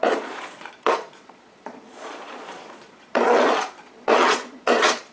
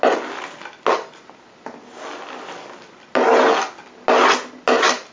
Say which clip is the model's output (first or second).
first